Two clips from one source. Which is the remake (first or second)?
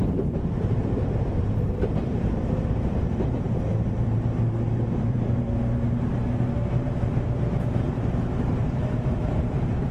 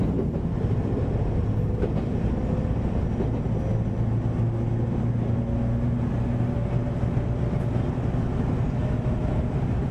first